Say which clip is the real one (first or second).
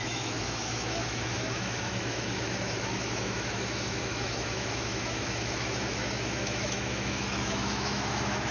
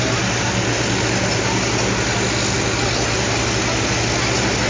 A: second